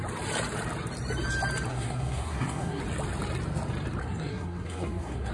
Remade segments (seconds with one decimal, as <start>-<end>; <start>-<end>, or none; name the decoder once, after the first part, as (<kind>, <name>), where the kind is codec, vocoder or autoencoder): 1.7-2.8 (codec, SNAC); 4.0-5.3